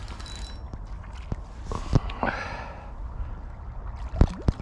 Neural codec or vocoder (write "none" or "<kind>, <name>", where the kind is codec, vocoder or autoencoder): none